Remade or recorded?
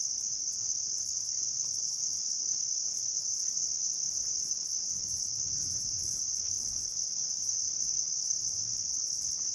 remade